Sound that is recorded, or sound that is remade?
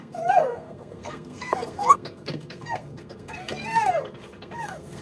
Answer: remade